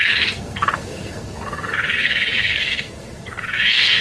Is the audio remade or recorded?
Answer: remade